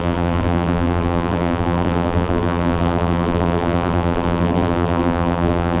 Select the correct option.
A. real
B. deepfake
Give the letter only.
B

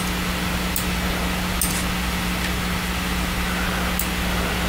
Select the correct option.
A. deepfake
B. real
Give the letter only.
B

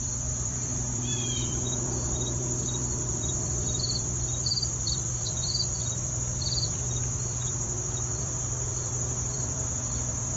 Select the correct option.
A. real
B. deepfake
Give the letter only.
B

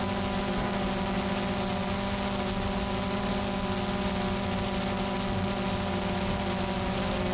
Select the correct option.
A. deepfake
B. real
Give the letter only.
B